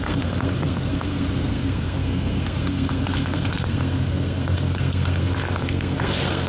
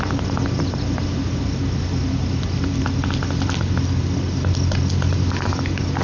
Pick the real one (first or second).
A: second